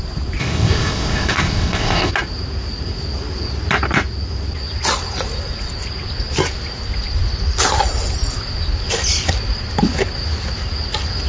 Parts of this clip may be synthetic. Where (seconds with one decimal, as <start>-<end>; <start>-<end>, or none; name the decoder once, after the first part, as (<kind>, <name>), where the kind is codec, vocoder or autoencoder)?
0.4-2.1 (codec, ZipCodec)